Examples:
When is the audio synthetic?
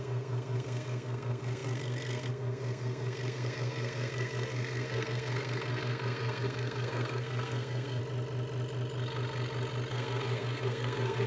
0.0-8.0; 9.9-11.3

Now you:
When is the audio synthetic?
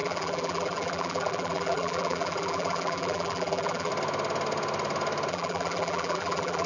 0.0-3.9; 5.3-6.7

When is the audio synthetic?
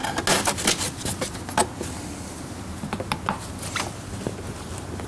none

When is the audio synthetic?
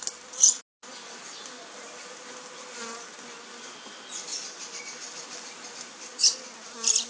4.3-4.8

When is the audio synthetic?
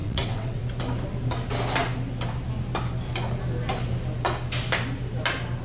0.0-0.6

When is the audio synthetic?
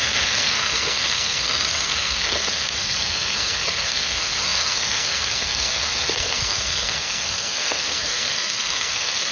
0.0-9.3